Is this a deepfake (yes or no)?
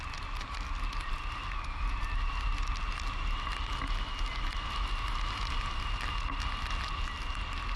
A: no